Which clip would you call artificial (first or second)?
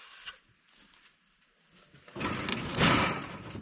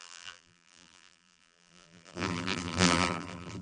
second